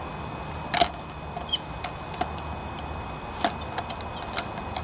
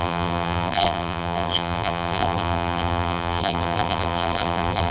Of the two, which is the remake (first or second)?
second